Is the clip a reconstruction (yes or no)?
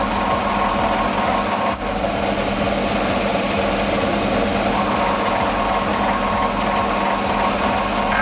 no